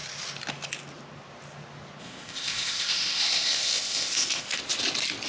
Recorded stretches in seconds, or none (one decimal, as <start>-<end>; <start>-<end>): 0.0-2.0; 4.6-5.3